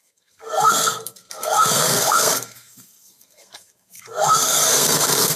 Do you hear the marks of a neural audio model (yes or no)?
yes